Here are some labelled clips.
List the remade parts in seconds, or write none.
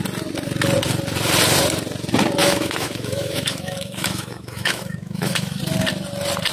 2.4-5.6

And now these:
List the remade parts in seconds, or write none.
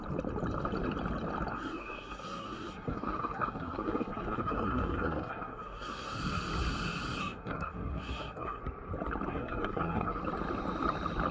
1.5-6.2; 7.2-8.6; 9.3-10.2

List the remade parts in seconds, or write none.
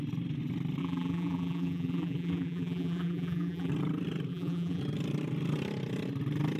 0.8-3.7; 4.3-4.8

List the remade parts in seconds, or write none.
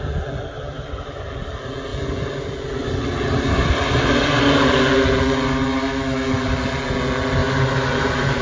7.4-8.4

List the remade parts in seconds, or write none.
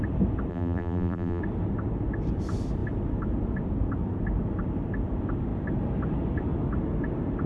0.5-1.4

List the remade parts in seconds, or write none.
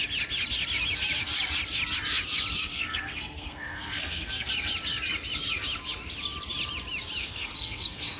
2.6-4.5; 7.2-8.2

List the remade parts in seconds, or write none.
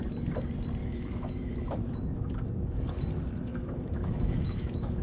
0.8-2.3; 3.5-5.0